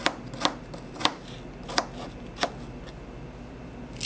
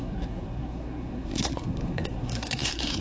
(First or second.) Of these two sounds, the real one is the first